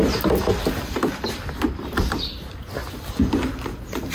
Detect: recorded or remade recorded